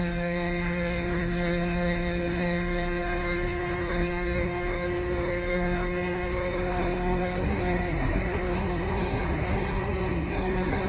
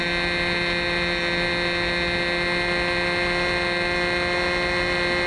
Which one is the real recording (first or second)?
second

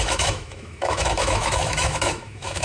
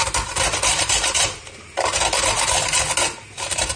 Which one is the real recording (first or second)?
second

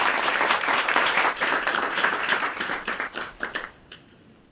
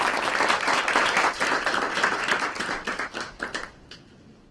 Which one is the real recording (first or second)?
second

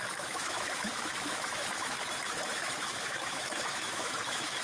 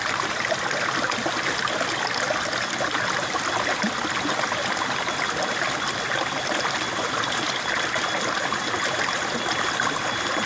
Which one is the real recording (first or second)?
second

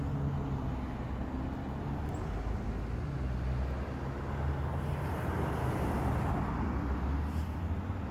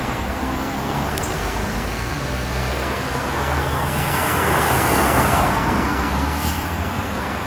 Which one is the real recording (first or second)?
first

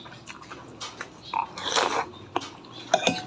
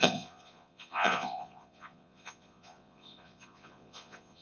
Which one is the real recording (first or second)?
first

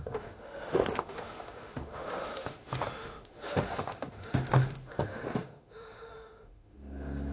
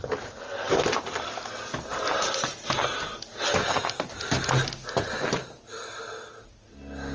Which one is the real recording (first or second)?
second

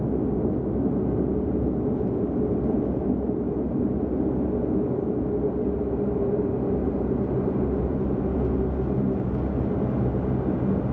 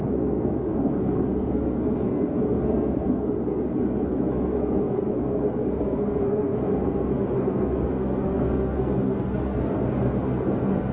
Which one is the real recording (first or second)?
first